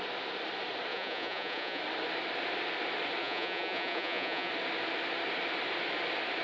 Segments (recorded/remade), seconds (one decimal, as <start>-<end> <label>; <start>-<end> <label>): 0.0-0.9 recorded; 0.9-1.8 remade; 1.8-3.2 recorded; 3.2-4.5 remade; 4.5-6.4 recorded

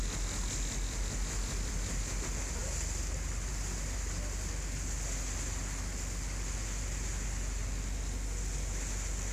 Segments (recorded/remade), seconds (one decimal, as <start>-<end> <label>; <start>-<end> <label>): 0.0-9.3 recorded